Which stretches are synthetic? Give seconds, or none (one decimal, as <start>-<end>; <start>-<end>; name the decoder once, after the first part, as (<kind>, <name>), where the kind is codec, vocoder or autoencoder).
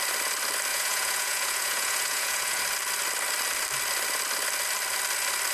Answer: 0.7-2.6 (vocoder, Vocos)